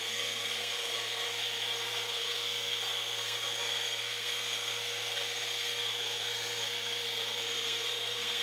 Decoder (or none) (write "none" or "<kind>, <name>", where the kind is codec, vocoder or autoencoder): codec, SNAC